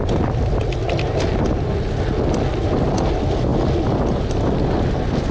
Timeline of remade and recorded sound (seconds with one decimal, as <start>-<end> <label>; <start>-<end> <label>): 0.0-5.3 recorded